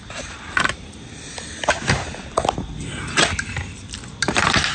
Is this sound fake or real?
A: real